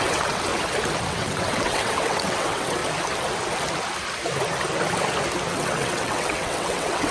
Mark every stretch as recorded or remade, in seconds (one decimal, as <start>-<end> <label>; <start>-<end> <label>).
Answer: 0.0-0.5 remade; 0.5-1.1 recorded; 1.1-2.8 remade; 2.8-5.5 recorded; 5.5-7.1 remade